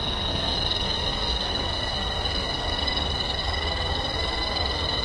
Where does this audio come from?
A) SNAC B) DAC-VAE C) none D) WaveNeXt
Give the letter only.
A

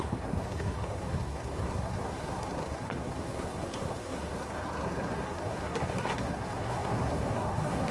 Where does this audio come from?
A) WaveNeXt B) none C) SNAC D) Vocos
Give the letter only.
C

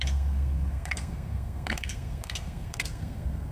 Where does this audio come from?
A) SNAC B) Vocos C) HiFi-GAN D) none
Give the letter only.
A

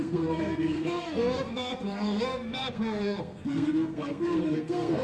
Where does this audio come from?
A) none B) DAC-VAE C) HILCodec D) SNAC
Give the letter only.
D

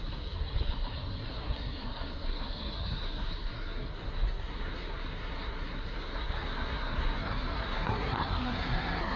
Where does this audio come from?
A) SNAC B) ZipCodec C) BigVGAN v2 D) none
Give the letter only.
A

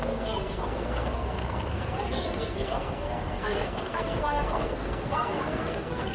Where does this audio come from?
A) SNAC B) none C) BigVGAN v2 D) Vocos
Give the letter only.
A